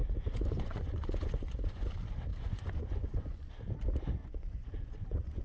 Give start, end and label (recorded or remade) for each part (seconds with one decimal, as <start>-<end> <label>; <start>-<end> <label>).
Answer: 0.0-1.9 remade; 1.9-2.3 recorded; 2.3-3.5 remade; 3.5-4.2 recorded; 4.2-5.4 remade